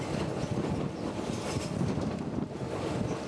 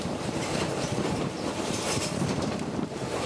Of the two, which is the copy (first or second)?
second